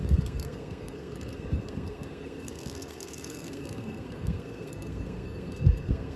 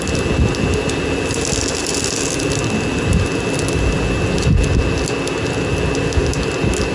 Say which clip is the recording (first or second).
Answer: second